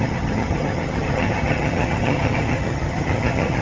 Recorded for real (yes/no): no